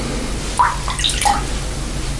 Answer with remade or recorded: recorded